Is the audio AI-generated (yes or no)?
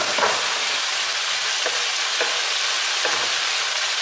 no